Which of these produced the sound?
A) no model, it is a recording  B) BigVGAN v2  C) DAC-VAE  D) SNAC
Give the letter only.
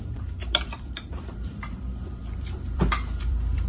B